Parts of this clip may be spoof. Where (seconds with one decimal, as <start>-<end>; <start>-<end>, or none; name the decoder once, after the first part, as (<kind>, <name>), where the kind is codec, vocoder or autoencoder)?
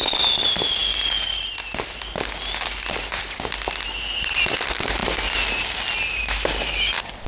none